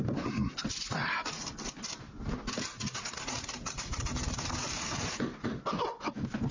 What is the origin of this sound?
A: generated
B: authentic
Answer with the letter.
B